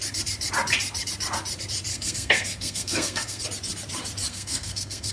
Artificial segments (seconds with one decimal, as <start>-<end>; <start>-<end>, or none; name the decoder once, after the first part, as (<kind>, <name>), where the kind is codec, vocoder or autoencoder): 1.9-3.4 (codec, SNAC); 4.3-5.1